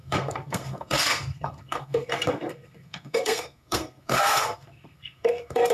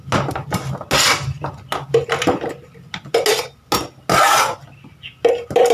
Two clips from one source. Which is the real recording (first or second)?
second